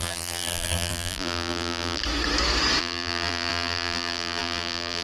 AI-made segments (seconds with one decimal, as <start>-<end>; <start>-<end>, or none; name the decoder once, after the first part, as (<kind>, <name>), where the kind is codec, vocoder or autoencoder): 0.0-2.0 (vocoder, BigVGAN v2); 2.8-5.0